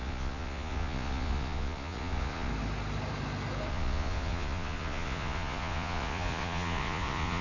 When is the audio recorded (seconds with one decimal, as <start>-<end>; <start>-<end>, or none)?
2.5-3.7